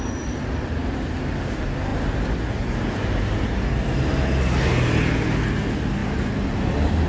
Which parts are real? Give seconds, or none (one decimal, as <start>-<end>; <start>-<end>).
0.0-7.1